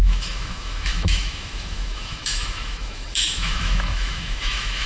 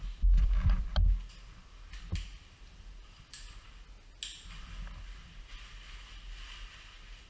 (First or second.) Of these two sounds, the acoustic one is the second